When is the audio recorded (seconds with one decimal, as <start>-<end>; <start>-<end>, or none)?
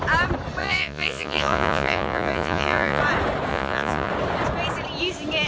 0.0-0.6; 3.0-3.5; 4.1-5.5